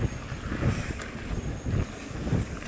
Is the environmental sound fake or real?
real